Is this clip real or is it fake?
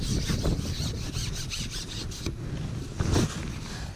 real